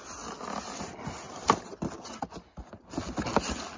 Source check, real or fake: real